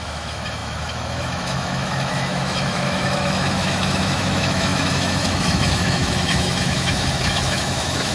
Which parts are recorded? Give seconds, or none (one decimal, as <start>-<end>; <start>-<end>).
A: none